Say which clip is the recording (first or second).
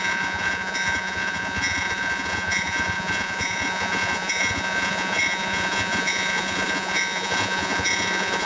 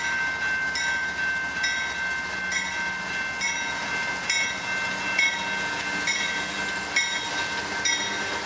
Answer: second